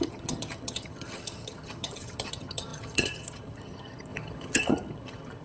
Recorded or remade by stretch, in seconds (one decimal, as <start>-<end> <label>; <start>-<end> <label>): 0.0-5.4 remade